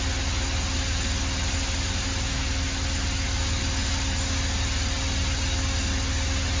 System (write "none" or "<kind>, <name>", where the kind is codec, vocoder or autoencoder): none